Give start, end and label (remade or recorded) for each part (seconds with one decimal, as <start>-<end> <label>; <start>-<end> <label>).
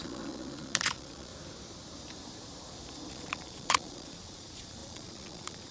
0.0-1.3 remade; 1.3-3.1 recorded; 3.1-5.7 remade